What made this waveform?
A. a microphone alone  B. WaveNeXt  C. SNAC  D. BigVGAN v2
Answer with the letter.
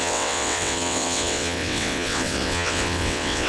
B